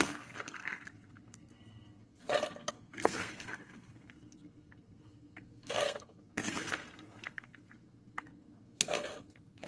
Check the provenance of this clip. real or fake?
fake